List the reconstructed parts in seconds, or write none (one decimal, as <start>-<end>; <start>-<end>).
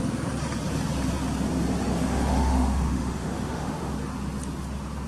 1.9-3.9